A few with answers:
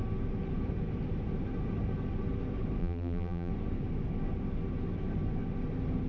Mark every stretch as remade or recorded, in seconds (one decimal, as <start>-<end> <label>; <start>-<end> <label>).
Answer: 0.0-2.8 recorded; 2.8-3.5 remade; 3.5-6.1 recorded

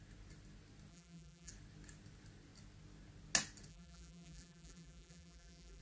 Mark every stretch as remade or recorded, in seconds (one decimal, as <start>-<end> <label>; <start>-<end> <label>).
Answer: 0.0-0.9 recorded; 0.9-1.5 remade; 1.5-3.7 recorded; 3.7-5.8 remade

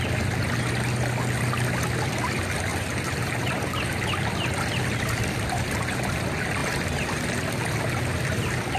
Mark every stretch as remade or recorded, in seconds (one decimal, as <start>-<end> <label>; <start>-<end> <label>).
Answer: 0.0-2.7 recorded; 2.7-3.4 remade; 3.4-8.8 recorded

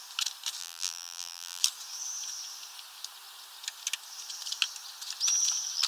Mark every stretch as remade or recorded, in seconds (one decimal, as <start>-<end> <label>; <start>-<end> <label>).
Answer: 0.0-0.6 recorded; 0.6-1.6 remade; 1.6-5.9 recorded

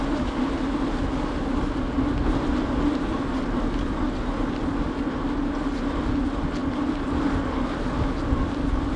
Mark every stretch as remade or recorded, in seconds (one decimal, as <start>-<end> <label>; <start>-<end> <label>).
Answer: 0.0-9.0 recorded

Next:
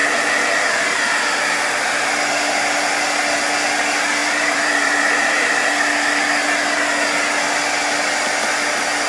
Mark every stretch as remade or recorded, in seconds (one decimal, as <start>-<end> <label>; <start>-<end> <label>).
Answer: 0.0-4.2 recorded; 4.2-5.7 remade; 5.7-9.1 recorded

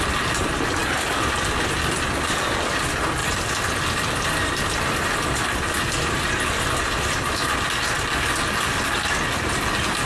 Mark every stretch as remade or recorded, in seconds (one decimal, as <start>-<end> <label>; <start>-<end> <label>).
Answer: 0.0-3.2 recorded; 3.2-8.3 remade; 8.3-10.1 recorded

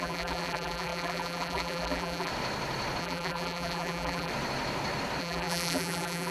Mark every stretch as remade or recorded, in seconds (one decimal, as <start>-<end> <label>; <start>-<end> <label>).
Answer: 0.0-2.3 remade; 2.3-3.0 recorded; 3.0-4.3 remade; 4.3-5.2 recorded; 5.2-6.3 remade